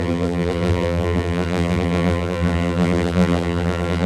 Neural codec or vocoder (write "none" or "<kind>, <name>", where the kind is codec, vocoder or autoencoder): vocoder, BigVGAN v2